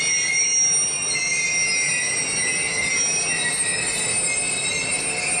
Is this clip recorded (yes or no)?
yes